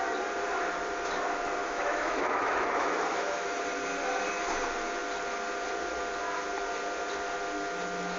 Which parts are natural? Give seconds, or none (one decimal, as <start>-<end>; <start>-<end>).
0.0-1.6; 3.6-8.2